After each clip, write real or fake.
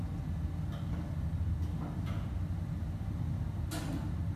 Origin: real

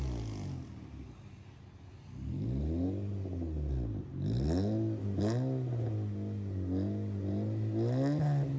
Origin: real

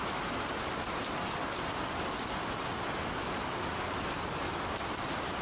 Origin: real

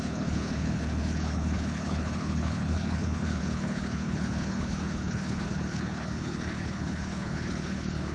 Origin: fake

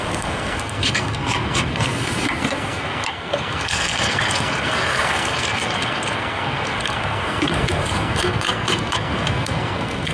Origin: fake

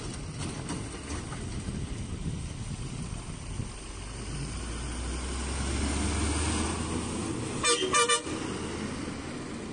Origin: real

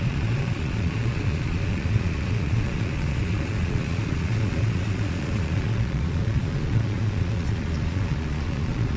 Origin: fake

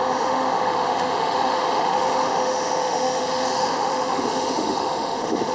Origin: fake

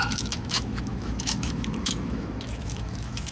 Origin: fake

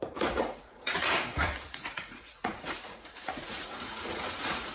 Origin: fake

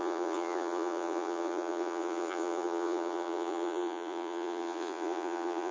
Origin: fake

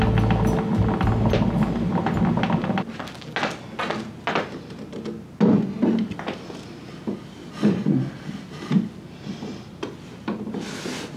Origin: real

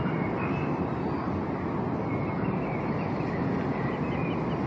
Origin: real